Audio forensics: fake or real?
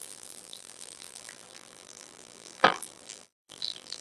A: fake